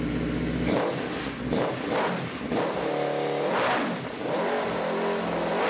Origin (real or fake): real